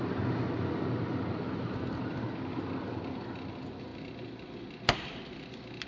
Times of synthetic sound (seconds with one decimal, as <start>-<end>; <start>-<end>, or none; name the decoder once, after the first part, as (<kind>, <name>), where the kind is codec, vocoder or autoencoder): none